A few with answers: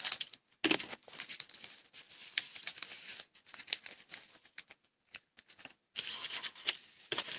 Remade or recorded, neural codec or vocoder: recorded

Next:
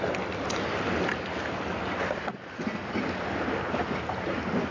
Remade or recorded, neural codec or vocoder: recorded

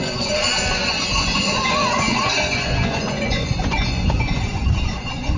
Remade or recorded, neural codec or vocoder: remade, vocoder, Vocos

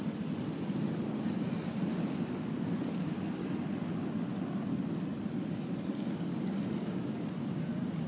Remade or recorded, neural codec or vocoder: recorded